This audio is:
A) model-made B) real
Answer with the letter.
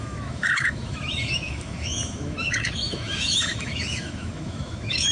A